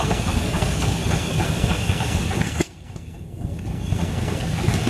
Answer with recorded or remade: remade